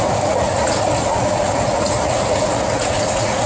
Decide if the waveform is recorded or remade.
remade